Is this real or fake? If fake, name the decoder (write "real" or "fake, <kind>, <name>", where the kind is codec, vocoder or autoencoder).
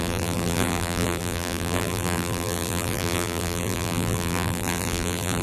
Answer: fake, vocoder, BigVGAN v2